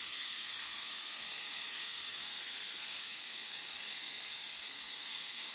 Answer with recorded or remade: remade